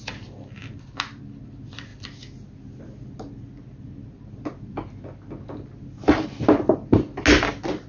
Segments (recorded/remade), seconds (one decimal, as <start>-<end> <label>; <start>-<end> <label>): 0.0-7.9 recorded